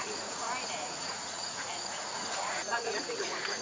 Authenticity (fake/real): fake